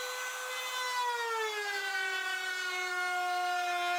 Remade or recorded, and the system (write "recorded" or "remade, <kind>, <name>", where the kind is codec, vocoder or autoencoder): recorded